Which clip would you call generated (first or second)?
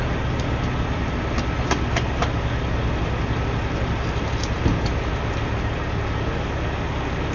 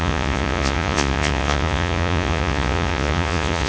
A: second